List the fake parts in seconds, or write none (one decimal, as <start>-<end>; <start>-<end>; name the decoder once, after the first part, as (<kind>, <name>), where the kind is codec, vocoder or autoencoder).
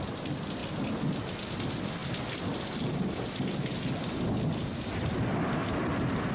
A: none